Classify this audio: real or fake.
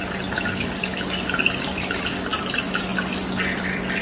real